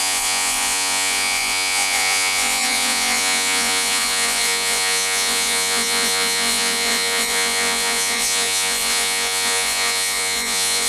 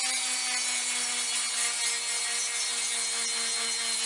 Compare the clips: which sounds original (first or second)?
second